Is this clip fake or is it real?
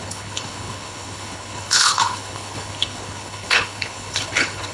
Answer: fake